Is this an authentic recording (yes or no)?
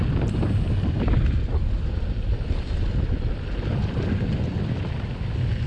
yes